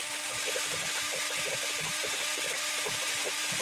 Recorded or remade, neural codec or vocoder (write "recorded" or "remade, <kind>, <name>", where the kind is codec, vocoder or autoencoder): remade, vocoder, BigVGAN v2